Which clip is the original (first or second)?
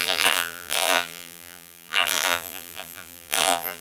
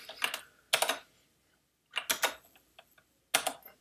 second